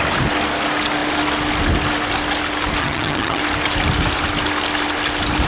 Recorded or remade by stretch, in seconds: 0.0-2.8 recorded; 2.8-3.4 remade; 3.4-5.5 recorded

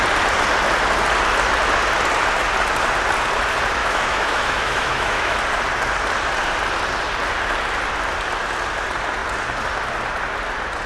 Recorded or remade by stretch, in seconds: 0.0-3.8 recorded; 3.8-5.4 remade; 5.4-10.9 recorded

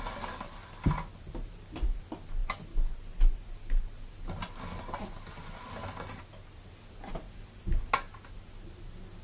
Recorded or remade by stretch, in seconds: 0.0-9.2 recorded

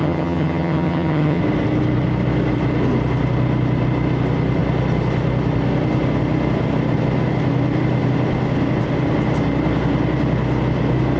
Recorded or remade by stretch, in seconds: 0.0-1.4 remade; 1.4-11.2 recorded